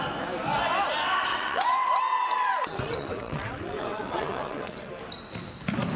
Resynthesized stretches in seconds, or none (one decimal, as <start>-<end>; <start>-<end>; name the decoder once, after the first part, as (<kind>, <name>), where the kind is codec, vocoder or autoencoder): 1.3-4.9 (vocoder, WaveNeXt)